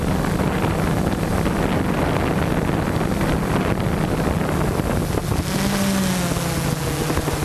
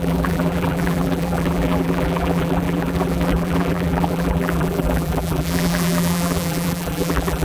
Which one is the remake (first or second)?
second